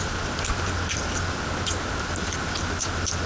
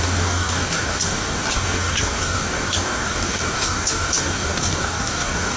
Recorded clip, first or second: first